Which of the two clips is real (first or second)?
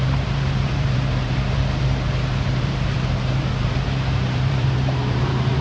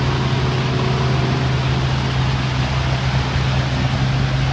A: second